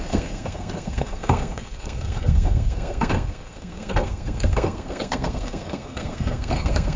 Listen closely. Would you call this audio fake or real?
fake